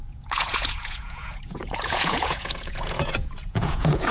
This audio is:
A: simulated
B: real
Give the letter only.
A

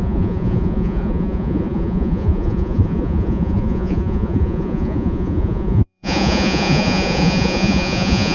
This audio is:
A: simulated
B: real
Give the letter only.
A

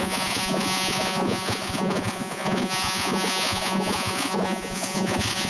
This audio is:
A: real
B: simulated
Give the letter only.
B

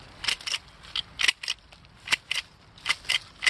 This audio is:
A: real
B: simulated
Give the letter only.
A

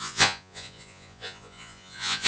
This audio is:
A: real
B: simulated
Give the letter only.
B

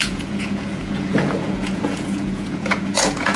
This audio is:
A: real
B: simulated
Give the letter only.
B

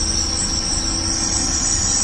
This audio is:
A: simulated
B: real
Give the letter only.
B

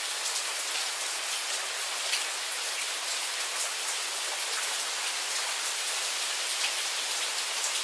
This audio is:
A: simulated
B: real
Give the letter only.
B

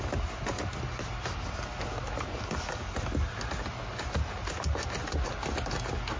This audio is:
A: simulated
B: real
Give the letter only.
B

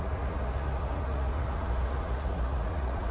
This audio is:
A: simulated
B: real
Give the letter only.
A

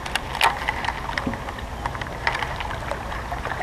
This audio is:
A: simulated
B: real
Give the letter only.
B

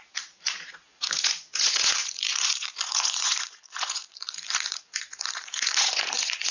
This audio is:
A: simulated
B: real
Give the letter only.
A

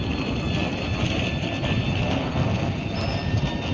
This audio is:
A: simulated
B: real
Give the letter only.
B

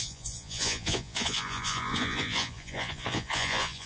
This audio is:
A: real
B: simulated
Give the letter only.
B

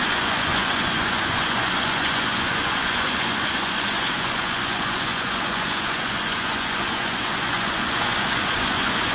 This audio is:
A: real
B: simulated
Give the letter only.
B